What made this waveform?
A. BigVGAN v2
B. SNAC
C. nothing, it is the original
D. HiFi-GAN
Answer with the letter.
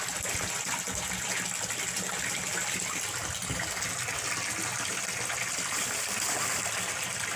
C